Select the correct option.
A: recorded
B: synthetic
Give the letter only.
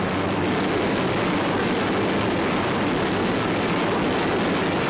A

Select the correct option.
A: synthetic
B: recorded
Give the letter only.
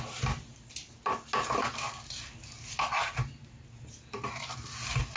B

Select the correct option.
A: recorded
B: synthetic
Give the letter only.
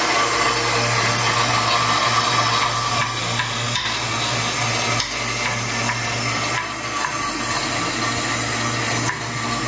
A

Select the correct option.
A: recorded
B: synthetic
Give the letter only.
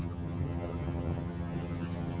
B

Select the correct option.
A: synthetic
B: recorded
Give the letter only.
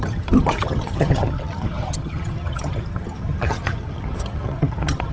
A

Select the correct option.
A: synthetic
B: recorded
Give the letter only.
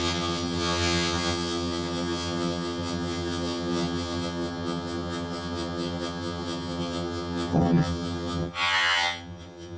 A